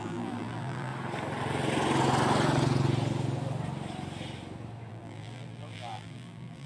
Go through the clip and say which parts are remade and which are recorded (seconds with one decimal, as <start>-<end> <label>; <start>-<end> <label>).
0.0-0.9 remade; 0.9-4.9 recorded; 4.9-6.7 remade